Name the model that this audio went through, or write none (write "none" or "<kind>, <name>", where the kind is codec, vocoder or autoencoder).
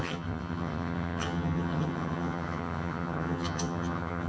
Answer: vocoder, HiFi-GAN